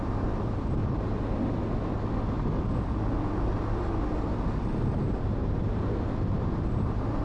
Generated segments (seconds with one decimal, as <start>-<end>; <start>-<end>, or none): 0.0-0.8; 4.9-7.2